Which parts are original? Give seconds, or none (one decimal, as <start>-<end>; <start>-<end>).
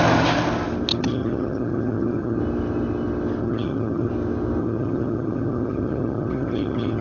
0.0-0.9; 2.4-3.4; 4.1-4.6